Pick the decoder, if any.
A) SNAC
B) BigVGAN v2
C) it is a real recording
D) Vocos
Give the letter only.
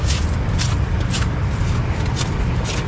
C